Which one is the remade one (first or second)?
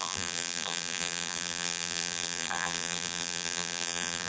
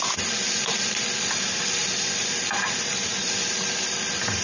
first